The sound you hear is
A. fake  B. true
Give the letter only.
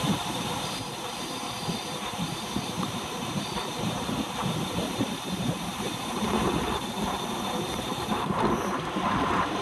A